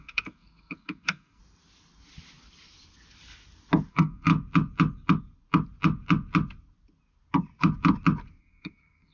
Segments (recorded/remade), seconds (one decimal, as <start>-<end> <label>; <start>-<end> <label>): 0.0-1.4 remade; 1.4-3.9 recorded; 3.9-4.3 remade; 4.3-8.4 recorded; 8.4-9.1 remade